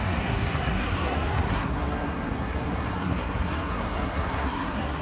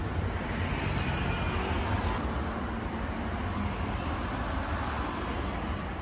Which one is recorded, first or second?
second